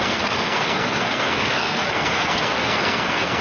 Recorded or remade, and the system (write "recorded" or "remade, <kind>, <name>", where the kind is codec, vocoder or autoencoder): remade, codec, SNAC